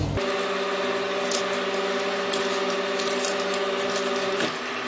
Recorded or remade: recorded